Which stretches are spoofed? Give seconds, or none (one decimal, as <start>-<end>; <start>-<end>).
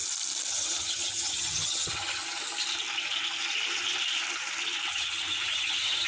0.5-2.2; 4.9-6.1